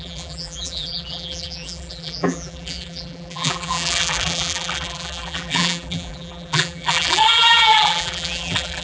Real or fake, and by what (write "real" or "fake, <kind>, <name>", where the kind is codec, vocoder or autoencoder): fake, vocoder, BigVGAN v2